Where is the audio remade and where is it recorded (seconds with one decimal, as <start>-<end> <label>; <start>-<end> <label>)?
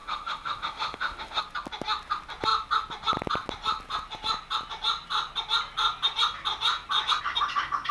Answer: 0.0-1.4 remade; 1.4-7.9 recorded